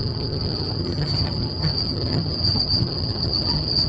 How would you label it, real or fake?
fake